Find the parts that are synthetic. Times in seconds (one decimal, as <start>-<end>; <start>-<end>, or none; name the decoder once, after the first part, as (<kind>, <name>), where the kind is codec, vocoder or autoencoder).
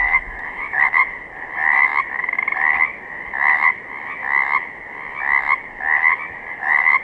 0.0-0.8 (autoencoder, DAC-VAE)